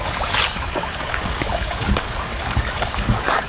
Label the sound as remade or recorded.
remade